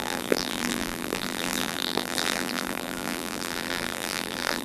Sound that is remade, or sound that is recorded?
remade